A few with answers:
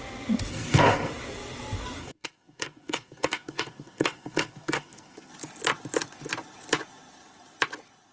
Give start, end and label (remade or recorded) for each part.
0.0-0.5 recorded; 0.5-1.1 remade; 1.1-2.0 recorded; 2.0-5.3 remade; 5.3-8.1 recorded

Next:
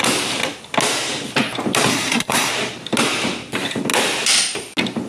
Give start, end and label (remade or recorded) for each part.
0.0-1.9 recorded; 1.9-2.5 remade; 2.5-5.1 recorded

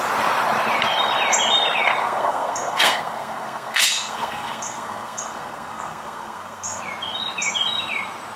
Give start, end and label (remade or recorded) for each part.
0.0-2.0 recorded; 2.0-6.8 remade; 6.8-8.4 recorded

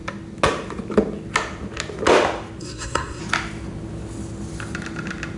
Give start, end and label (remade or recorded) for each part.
0.0-2.6 recorded; 2.6-3.2 remade; 3.2-5.4 recorded

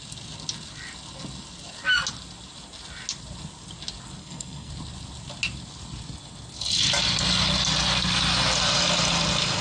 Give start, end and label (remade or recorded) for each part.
0.0-4.2 recorded; 4.2-4.7 remade; 4.7-9.6 recorded

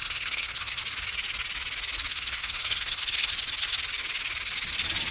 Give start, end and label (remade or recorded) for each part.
0.0-0.8 remade; 0.8-2.1 recorded; 2.1-3.3 remade; 3.3-5.1 recorded